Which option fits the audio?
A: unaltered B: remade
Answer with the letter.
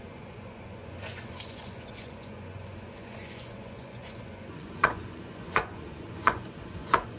B